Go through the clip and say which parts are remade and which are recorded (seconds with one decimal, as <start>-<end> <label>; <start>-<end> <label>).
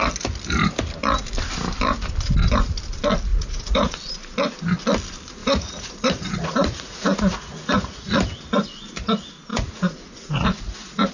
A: 0.0-3.3 recorded; 3.3-4.0 remade; 4.0-5.4 recorded; 5.4-8.2 remade; 8.2-9.5 recorded; 9.5-11.1 remade